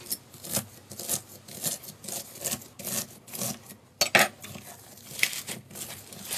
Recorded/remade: recorded